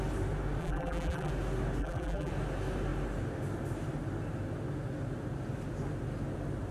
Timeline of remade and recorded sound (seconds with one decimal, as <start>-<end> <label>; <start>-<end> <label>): 0.0-0.6 recorded; 0.6-1.3 remade; 1.3-1.8 recorded; 1.8-2.3 remade; 2.3-6.7 recorded